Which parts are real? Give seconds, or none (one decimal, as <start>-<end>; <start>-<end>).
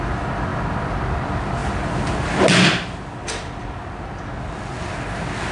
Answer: 0.0-5.5